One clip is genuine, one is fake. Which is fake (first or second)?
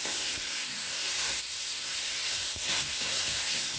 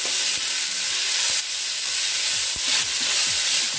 first